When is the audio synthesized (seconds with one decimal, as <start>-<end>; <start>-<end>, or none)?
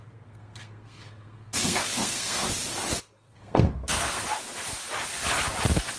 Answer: 0.0-2.4; 3.0-4.2